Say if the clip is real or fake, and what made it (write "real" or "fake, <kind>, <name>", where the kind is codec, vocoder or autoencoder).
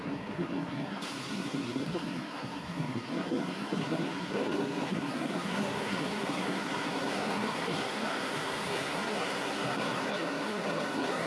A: fake, codec, SNAC